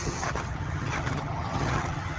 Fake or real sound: fake